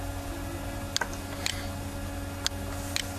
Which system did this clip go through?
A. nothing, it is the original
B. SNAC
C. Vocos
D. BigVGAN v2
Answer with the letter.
A